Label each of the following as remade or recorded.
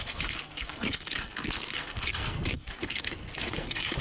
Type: remade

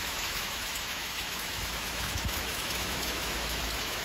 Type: remade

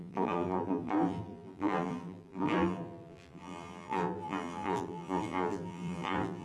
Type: remade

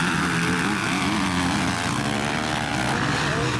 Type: recorded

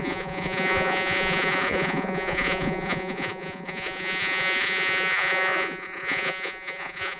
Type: remade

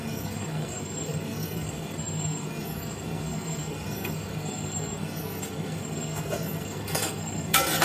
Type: remade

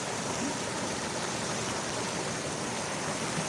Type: recorded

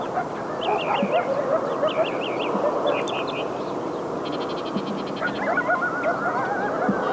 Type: recorded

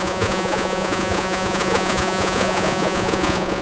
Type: remade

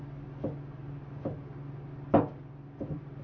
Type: recorded